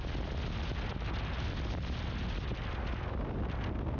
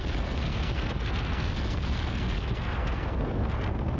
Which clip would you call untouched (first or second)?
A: first